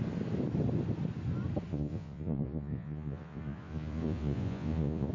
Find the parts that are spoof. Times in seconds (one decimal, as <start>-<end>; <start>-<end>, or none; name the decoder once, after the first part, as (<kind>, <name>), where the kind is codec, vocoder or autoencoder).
1.7-5.1 (vocoder, Vocos)